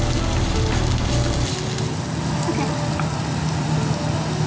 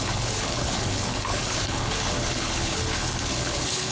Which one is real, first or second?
first